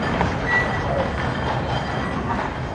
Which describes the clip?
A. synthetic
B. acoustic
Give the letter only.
B